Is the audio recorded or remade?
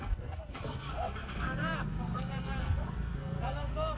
remade